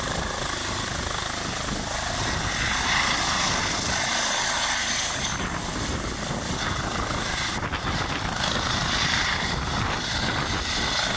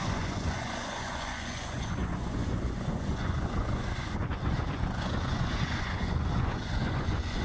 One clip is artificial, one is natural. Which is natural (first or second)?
first